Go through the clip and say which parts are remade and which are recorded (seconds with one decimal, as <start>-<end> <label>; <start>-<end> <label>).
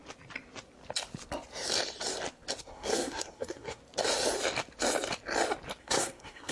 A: 0.0-2.6 recorded; 2.6-3.8 remade; 3.8-5.8 recorded; 5.8-6.5 remade